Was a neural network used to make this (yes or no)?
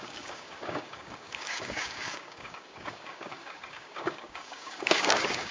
yes